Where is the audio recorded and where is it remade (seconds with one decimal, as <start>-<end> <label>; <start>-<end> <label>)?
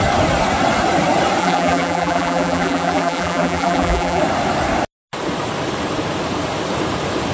0.0-1.4 recorded; 1.4-4.2 remade; 4.2-7.3 recorded